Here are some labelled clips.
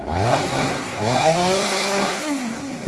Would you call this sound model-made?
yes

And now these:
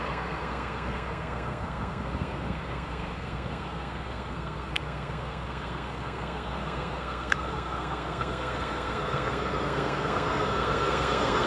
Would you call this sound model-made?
yes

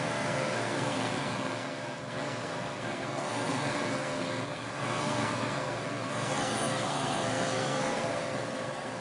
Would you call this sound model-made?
yes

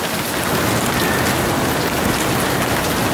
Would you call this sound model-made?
no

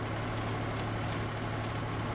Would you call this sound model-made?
no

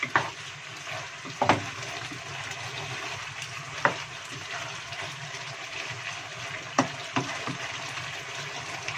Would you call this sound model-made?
no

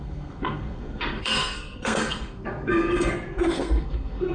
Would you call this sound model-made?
yes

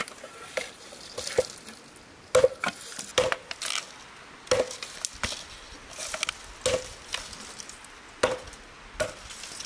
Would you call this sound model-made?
no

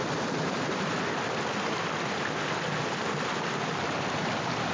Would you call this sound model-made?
no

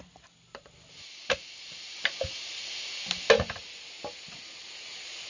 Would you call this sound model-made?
no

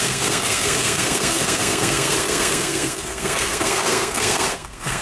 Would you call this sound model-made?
yes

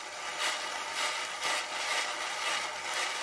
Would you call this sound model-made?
yes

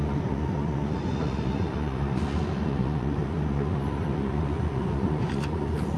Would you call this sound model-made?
yes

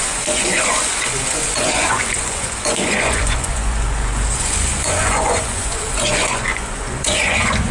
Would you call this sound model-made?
yes